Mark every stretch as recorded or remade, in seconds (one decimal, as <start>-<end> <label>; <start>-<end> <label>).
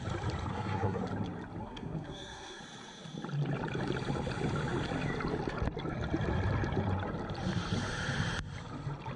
0.0-0.5 recorded; 0.5-1.0 remade; 1.0-1.6 recorded; 1.6-2.6 remade; 2.6-9.2 recorded